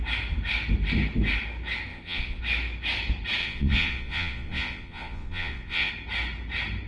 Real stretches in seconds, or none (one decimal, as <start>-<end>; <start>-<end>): 0.0-1.9; 2.4-3.4; 5.9-6.9